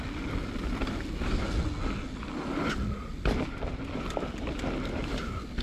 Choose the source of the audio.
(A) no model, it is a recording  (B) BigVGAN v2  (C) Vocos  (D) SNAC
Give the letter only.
A